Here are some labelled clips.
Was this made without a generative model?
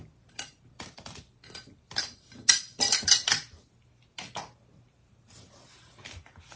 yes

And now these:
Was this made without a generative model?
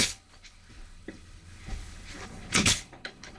no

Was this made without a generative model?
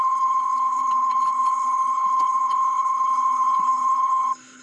no